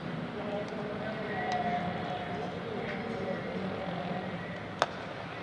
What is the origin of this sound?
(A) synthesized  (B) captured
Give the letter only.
B